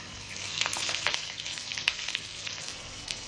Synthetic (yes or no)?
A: yes